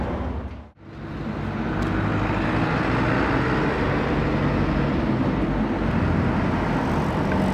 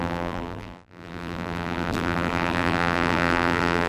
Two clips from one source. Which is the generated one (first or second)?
second